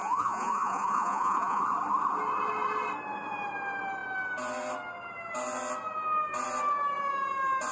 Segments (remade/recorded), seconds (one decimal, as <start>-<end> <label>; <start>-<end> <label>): 0.0-1.6 remade; 1.6-7.7 recorded

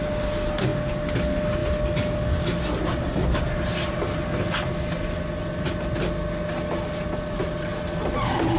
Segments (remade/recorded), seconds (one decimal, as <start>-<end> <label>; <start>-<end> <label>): 0.0-8.6 recorded

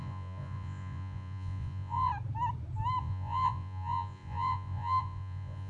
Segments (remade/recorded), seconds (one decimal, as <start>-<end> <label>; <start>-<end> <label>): 0.0-2.1 remade; 2.1-3.0 recorded; 3.0-5.7 remade

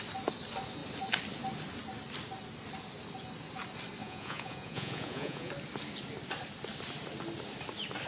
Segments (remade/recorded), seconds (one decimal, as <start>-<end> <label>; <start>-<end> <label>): 0.0-4.0 recorded; 4.0-5.5 remade; 5.5-8.1 recorded

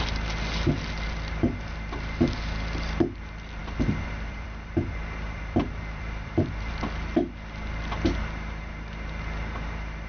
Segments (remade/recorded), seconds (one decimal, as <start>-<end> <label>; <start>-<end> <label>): 0.0-3.6 recorded; 3.6-6.7 remade; 6.7-10.1 recorded

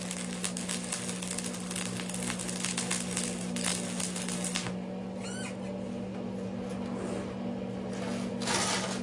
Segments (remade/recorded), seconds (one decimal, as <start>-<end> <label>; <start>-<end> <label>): 0.0-9.0 recorded

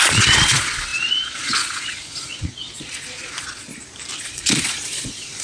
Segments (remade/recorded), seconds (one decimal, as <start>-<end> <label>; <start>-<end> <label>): 0.0-3.7 remade; 3.7-4.2 recorded; 4.2-5.4 remade